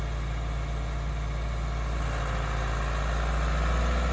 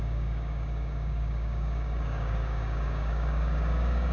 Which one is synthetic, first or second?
second